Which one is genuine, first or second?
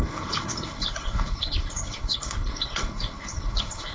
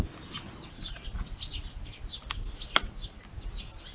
second